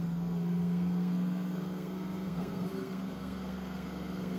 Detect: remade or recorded remade